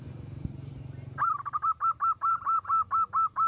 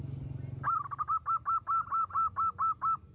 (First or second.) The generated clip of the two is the first